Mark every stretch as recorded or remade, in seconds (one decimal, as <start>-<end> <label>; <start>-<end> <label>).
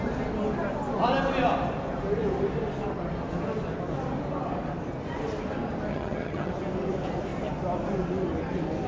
0.0-5.9 recorded; 5.9-6.5 remade; 6.5-8.9 recorded